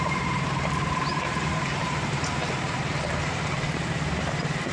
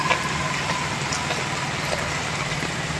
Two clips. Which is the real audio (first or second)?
second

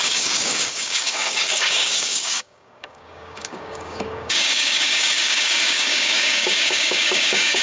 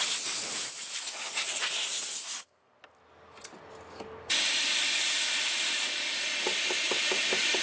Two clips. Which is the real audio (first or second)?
second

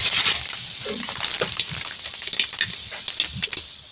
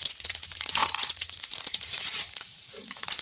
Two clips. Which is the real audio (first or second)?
first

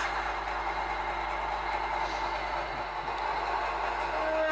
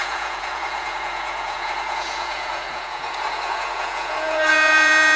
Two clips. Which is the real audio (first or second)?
first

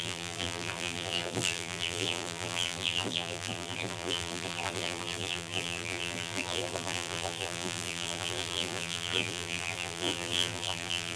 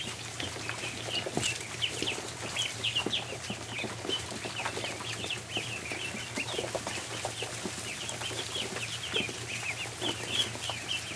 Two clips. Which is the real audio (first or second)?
second